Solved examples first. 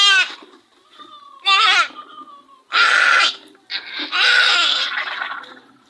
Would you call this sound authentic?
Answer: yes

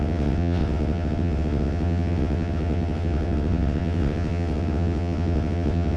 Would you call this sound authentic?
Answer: no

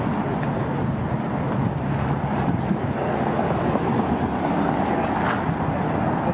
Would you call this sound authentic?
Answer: yes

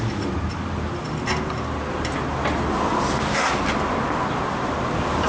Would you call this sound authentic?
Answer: yes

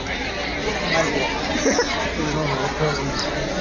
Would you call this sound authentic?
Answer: yes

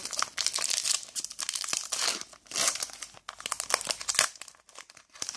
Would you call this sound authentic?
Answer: yes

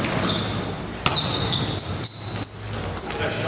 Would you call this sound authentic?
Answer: yes